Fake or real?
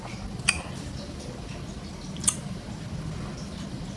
real